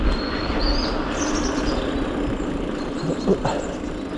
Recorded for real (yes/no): yes